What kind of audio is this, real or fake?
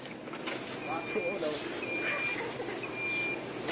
real